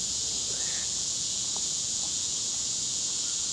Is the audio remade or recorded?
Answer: remade